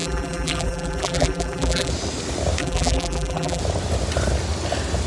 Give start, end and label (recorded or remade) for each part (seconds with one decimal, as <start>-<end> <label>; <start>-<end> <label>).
0.0-1.9 remade; 1.9-2.6 recorded; 2.6-3.6 remade; 3.6-5.1 recorded